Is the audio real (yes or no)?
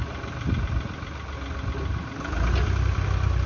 yes